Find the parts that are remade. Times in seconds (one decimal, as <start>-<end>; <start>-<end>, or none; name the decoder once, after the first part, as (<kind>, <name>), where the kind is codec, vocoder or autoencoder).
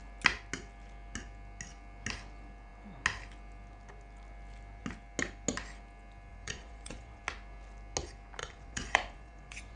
6.3-7.2 (vocoder, Vocos); 8.4-9.8